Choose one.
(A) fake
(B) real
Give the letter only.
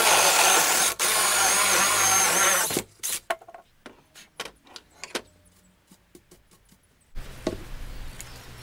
B